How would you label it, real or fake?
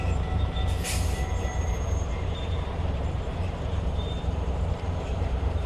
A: fake